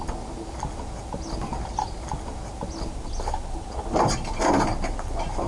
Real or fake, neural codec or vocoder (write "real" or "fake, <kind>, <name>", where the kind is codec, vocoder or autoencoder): real